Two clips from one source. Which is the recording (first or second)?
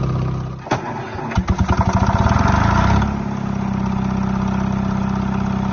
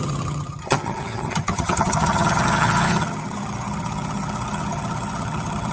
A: first